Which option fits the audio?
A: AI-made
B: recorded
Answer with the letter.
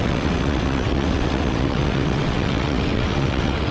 A